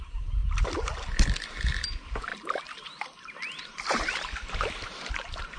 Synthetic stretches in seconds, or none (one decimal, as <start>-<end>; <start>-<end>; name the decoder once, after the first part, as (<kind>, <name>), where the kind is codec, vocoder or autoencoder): none